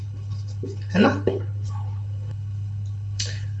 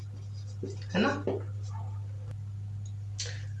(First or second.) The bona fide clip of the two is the second